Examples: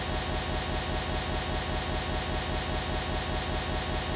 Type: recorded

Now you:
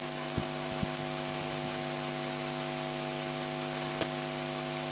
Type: recorded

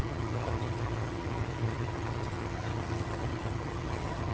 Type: remade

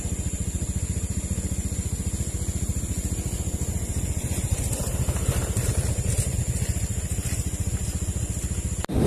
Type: recorded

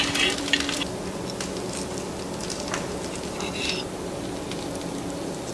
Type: recorded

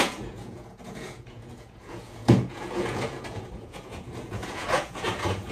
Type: remade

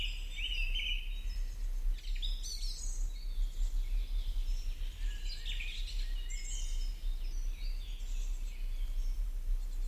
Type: recorded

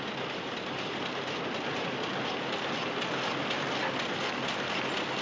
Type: recorded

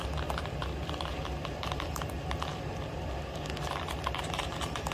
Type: recorded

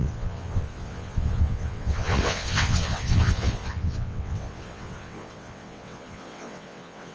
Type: remade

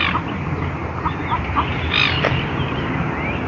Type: recorded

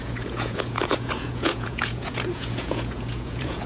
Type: remade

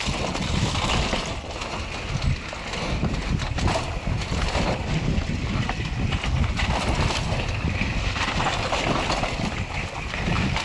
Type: recorded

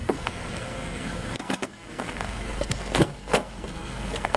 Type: remade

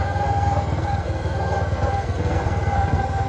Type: remade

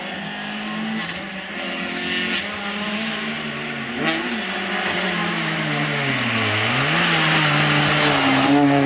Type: recorded